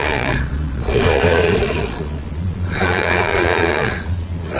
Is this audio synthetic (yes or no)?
yes